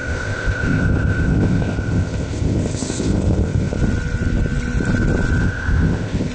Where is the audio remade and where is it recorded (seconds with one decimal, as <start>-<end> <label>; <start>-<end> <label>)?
0.0-3.8 remade; 3.8-5.4 recorded; 5.4-6.3 remade